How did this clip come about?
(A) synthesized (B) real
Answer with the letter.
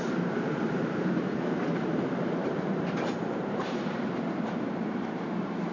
A